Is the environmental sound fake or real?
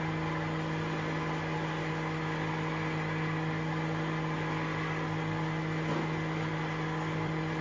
real